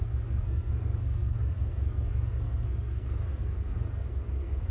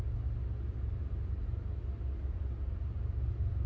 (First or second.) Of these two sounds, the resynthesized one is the first